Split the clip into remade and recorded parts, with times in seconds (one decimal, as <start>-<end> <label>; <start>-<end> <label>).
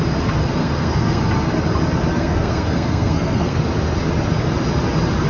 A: 0.0-0.6 recorded; 0.6-1.2 remade; 1.2-2.1 recorded; 2.1-3.6 remade; 3.6-5.3 recorded